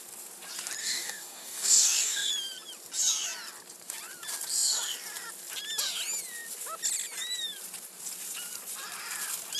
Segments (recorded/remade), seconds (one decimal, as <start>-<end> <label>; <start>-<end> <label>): 0.0-0.8 recorded; 0.8-2.3 remade; 2.3-9.6 recorded